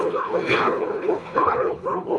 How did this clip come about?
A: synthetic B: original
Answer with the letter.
A